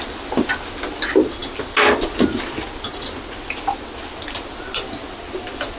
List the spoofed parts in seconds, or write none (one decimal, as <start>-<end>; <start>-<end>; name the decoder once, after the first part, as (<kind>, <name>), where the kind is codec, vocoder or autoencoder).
none